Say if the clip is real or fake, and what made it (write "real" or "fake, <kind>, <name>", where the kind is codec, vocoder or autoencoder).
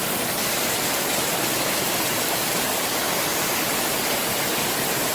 real